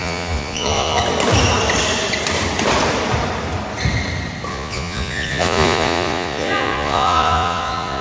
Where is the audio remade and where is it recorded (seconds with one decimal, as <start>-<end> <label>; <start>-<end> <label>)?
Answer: 0.0-1.0 remade; 1.0-4.5 recorded; 4.5-8.0 remade